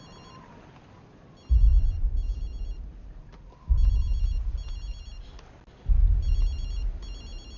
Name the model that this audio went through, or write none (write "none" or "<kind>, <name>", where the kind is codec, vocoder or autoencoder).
none